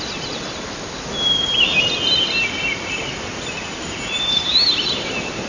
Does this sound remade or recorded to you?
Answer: recorded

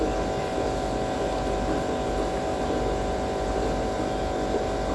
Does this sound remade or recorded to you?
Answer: remade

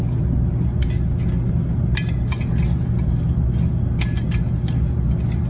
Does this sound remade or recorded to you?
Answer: recorded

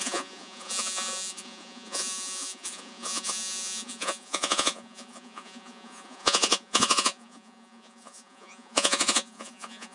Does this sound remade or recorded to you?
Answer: remade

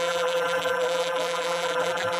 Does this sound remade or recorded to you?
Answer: remade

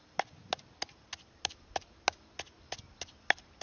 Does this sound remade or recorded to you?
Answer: recorded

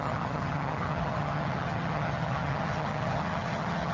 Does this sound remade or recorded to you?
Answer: remade